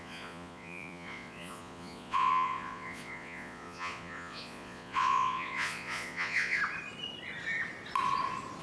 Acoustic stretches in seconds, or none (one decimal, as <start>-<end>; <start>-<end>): 6.6-8.6